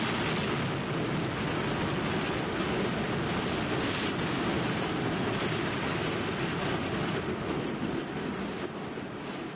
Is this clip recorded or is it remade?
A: recorded